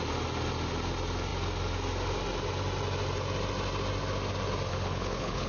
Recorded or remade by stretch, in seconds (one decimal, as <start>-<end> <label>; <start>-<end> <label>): 0.0-4.7 recorded; 4.7-5.5 remade